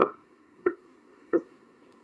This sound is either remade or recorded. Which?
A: remade